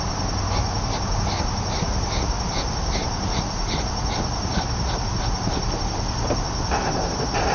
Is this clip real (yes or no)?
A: yes